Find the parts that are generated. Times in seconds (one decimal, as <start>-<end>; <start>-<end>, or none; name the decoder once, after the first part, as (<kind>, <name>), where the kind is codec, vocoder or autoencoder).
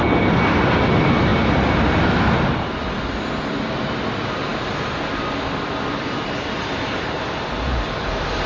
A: none